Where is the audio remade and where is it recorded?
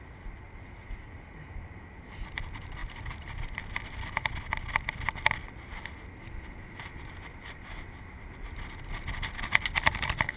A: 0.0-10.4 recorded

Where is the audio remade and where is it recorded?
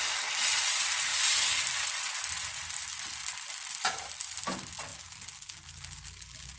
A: 0.0-6.6 recorded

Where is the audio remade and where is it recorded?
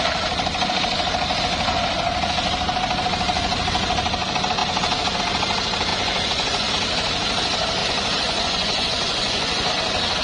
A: 0.0-5.9 recorded; 5.9-6.7 remade; 6.7-7.8 recorded; 7.8-9.7 remade; 9.7-10.2 recorded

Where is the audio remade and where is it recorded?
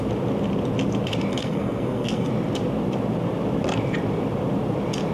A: 0.0-1.3 recorded; 1.3-2.3 remade; 2.3-5.1 recorded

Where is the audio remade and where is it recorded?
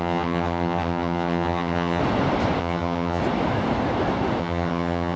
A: 0.0-2.0 remade; 2.0-2.6 recorded; 2.6-3.2 remade; 3.2-4.4 recorded; 4.4-5.2 remade